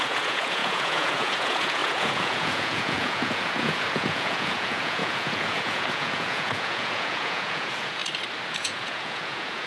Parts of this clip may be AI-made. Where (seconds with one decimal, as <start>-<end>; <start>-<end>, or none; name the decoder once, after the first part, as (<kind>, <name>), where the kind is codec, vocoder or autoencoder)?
0.0-8.0 (vocoder, Vocos); 8.5-9.7